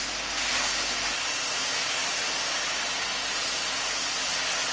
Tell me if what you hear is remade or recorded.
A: recorded